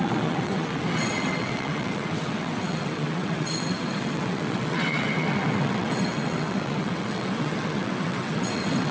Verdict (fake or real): fake